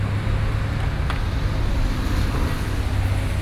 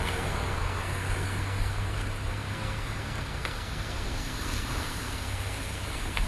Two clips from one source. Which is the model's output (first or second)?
second